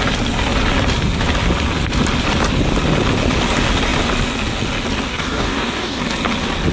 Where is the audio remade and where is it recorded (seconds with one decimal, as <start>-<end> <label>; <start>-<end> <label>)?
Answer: 0.0-5.1 recorded; 5.1-6.0 remade; 6.0-6.7 recorded